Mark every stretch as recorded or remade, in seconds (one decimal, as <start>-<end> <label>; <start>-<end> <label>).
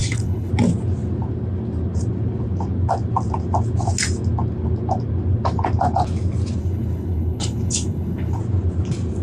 0.0-0.5 remade; 0.5-6.6 recorded; 6.6-8.4 remade; 8.4-9.2 recorded